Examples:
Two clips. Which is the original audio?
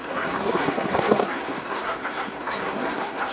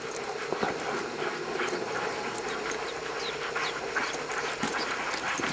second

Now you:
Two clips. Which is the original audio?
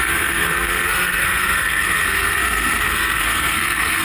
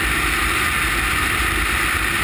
second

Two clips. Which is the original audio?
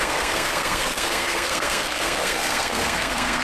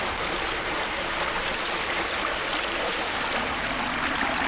second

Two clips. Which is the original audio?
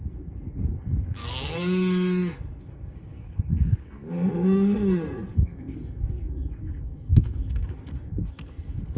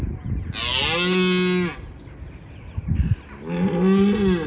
second